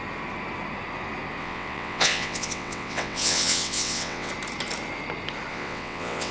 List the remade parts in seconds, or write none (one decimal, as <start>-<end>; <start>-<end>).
1.4-4.3; 5.5-6.3

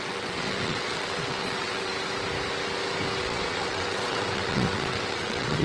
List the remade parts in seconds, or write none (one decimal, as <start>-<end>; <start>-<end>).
0.0-1.9; 3.2-5.6

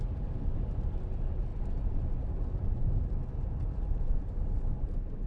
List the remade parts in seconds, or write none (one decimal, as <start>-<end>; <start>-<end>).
none

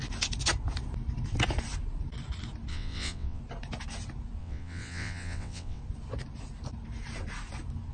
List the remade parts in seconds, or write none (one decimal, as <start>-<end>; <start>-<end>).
2.7-3.4; 4.4-5.8

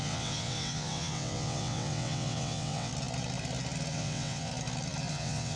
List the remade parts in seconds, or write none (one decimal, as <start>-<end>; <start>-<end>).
0.0-2.9; 3.9-4.5; 5.1-5.6

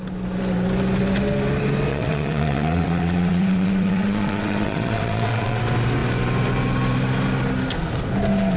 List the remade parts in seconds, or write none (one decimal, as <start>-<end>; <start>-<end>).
1.9-5.6

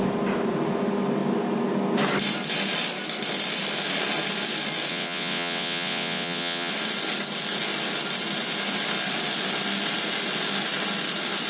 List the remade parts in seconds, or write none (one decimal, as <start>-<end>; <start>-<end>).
4.9-6.7